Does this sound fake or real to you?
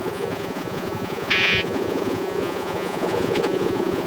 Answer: fake